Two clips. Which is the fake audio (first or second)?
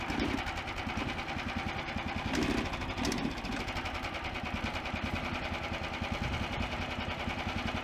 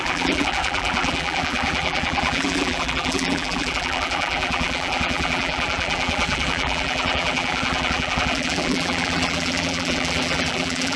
second